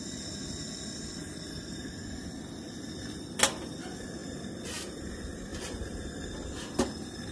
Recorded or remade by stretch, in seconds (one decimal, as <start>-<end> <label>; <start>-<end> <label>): 0.0-7.3 recorded